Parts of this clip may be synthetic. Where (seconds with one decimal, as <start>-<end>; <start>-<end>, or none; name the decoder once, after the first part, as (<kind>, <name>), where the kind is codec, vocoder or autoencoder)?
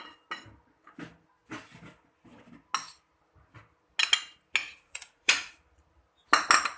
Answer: 4.6-5.5 (vocoder, Vocos)